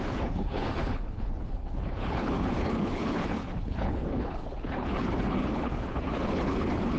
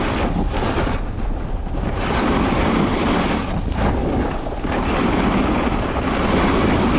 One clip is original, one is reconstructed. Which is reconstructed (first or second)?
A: first